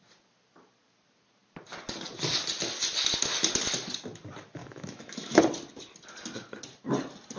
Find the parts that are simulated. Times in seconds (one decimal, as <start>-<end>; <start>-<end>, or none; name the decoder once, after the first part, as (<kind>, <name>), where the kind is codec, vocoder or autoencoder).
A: 4.6-5.4 (autoencoder, DAC-VAE)